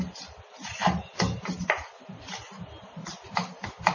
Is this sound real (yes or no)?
yes